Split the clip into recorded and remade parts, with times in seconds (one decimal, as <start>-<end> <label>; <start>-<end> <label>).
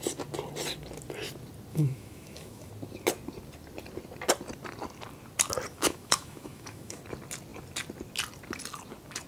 0.0-1.7 recorded; 1.7-2.7 remade; 2.7-5.7 recorded; 5.7-7.0 remade; 7.0-9.3 recorded